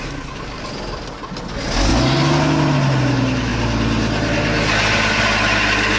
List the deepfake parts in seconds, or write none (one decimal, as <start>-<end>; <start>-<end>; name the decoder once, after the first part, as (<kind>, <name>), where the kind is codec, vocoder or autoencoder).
none